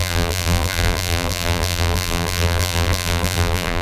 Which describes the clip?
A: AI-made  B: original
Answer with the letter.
A